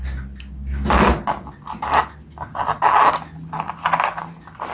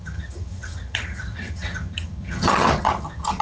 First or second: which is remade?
second